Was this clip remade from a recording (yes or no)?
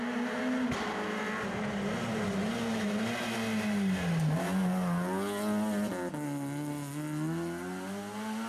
no